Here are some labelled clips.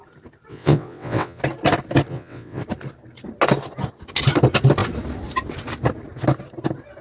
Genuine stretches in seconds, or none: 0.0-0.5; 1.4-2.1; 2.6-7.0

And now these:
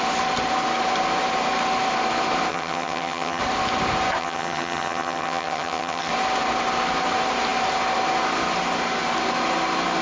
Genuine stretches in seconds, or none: 0.0-2.5; 3.4-4.2; 6.1-10.0

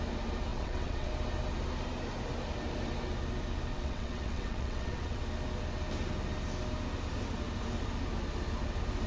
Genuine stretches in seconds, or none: 0.0-0.5; 1.1-3.7; 5.2-9.1

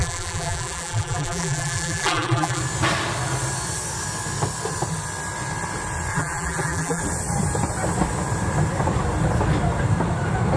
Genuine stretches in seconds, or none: 2.6-6.1; 7.0-10.6

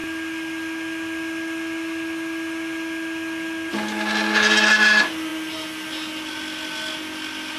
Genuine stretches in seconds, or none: 0.0-7.6

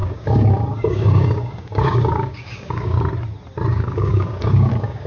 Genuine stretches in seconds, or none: 3.1-3.7